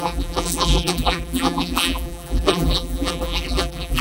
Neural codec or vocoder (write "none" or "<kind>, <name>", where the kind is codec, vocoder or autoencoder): vocoder, BigVGAN v2